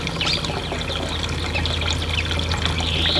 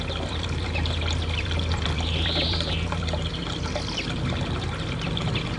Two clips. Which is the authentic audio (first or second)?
first